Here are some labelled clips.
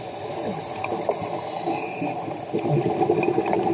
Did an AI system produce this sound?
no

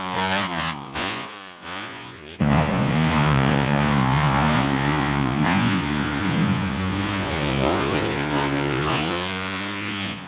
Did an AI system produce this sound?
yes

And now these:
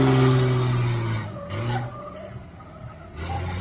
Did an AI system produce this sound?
no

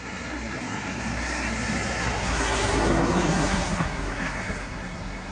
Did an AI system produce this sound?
yes